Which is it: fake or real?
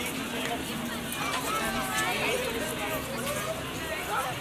real